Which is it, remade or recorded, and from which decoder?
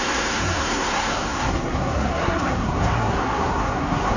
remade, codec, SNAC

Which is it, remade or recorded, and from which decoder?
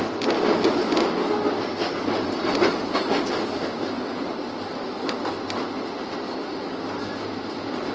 recorded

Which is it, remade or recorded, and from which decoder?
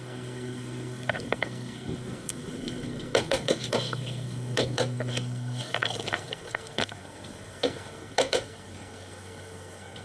remade, codec, SNAC